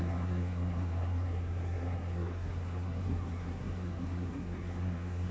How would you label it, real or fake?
fake